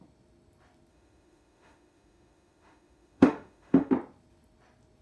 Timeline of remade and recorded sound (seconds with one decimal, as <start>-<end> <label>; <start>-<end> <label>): 0.0-0.9 recorded; 0.9-3.9 remade; 3.9-5.0 recorded